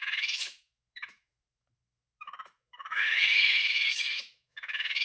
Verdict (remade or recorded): remade